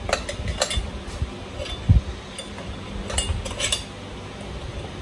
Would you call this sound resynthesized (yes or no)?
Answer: no